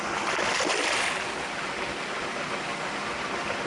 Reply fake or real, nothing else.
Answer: real